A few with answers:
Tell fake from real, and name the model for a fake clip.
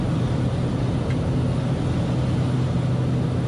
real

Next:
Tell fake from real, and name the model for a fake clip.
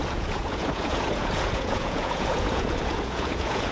fake, vocoder, Vocos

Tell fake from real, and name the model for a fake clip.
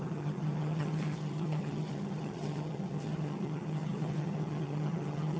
fake, vocoder, HiFi-GAN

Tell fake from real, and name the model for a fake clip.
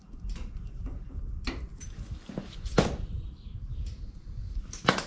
real